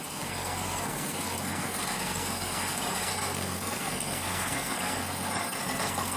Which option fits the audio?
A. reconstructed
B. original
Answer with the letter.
A